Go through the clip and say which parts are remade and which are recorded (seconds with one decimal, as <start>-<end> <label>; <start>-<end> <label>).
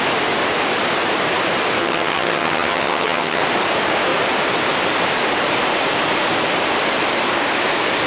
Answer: 0.0-1.8 recorded; 1.8-3.4 remade; 3.4-8.1 recorded